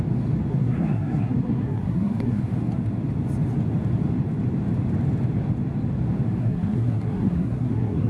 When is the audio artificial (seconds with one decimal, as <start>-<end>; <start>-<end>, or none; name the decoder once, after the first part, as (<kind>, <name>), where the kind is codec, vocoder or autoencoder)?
0.5-2.4 (codec, SNAC); 6.4-8.1